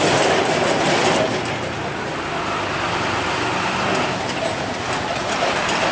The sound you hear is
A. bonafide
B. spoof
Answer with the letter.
A